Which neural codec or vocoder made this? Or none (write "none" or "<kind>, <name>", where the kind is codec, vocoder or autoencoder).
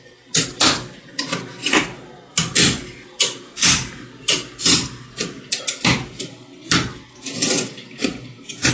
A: none